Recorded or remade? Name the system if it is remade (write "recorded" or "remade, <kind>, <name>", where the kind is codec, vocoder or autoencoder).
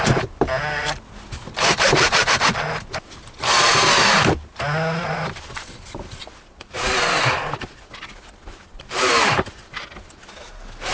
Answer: recorded